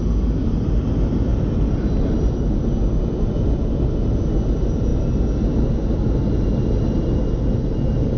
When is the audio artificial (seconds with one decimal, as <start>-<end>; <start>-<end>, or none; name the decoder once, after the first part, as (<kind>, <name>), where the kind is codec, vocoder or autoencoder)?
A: none